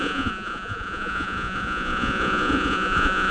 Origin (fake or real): fake